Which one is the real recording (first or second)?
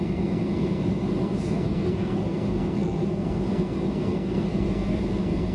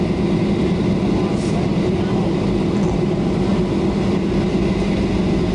second